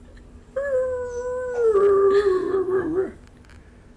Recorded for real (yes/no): yes